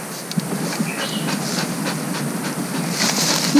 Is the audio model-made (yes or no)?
no